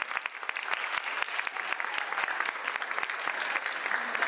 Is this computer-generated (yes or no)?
no